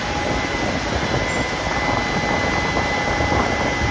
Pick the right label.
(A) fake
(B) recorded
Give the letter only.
B